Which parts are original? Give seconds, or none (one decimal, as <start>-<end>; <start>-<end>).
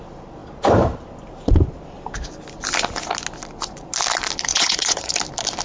0.0-4.5; 5.1-5.6